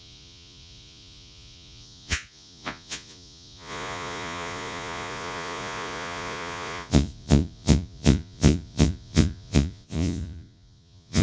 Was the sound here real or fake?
fake